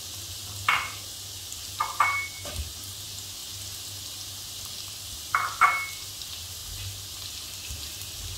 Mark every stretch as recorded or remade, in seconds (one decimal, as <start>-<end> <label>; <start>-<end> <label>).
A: 0.0-8.4 recorded